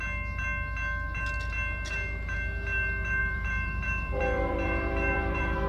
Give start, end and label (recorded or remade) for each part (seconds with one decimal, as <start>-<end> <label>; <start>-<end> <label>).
0.0-3.2 recorded; 3.2-5.7 remade